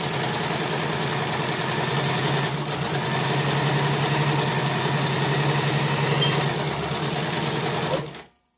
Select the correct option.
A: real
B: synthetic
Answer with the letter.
A